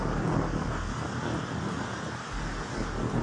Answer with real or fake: real